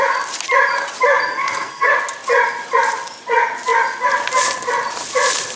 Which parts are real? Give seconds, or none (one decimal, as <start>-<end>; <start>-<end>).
0.0-1.3; 1.9-5.6